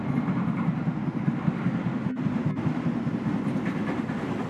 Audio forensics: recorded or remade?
recorded